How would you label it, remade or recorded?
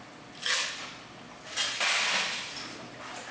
recorded